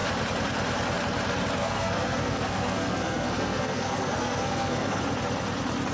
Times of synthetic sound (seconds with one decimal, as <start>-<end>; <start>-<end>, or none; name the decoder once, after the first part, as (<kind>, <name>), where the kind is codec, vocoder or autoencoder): 1.6-5.0 (codec, SNAC)